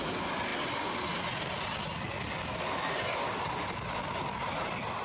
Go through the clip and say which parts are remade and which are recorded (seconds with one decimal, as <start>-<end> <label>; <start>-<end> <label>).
0.0-5.0 recorded